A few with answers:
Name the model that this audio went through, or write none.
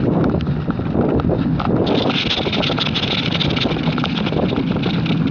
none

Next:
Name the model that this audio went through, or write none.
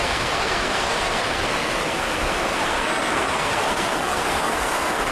codec, SNAC